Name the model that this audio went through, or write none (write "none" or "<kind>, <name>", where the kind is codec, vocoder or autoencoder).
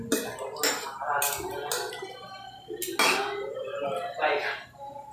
none